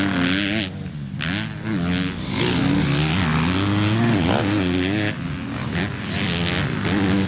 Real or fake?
real